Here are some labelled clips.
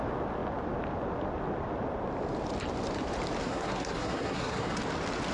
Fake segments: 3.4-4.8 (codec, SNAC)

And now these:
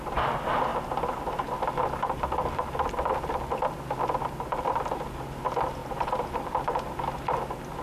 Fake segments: none

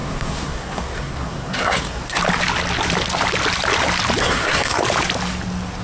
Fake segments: 0.0-2.2 (codec, SNAC); 4.2-4.8

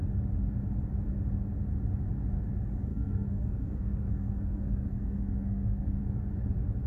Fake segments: 2.9-6.0 (codec, SNAC)